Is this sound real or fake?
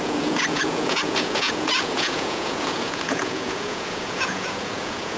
fake